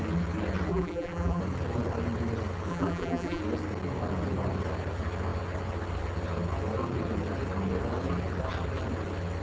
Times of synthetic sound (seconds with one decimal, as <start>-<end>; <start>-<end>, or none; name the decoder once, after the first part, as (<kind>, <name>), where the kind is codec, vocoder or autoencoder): 0.7-1.4 (vocoder, BigVGAN v2); 2.7-3.4